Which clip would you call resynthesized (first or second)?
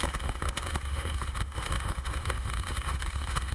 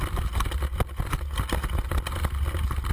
first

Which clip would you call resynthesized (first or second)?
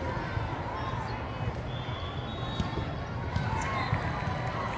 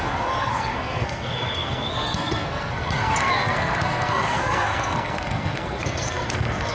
second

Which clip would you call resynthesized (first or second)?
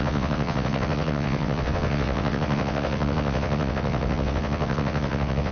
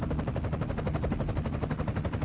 first